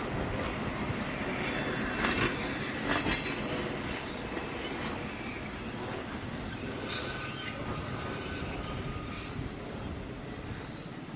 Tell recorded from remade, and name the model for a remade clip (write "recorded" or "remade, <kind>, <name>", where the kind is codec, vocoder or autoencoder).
recorded